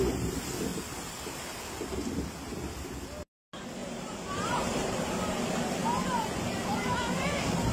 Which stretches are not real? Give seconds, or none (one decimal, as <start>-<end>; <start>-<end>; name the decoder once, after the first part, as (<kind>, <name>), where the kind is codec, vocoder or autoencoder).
0.7-1.4 (vocoder, BigVGAN v2); 3.8-5.0